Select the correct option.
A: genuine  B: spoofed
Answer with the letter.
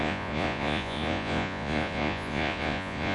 B